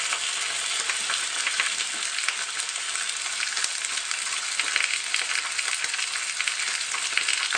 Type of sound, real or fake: real